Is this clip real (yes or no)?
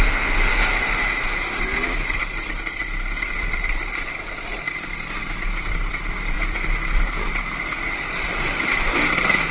no